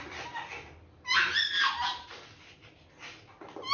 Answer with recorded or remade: recorded